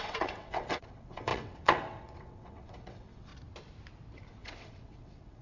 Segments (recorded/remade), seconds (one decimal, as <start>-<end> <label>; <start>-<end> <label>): 0.0-3.3 remade; 3.3-4.4 recorded; 4.4-5.4 remade